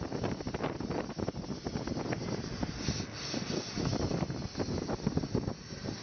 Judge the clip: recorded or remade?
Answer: recorded